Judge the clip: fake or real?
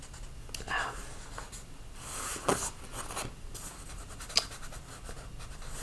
real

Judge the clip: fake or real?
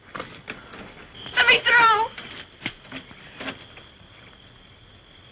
real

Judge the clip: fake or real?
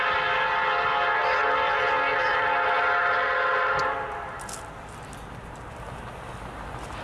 real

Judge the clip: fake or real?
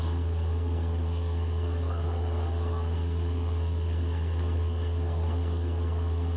fake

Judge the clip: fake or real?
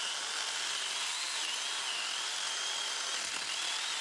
real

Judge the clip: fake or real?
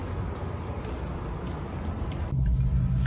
real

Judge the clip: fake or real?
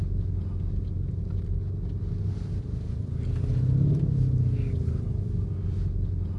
real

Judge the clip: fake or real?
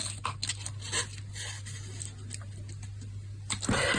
real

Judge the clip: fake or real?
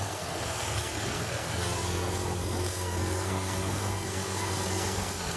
fake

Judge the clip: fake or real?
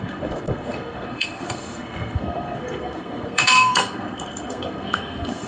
fake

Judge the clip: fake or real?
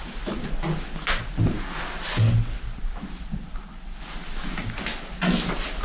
real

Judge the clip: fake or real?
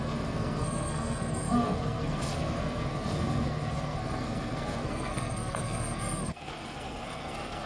fake